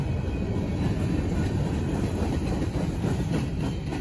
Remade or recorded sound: recorded